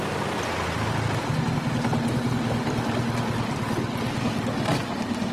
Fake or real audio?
real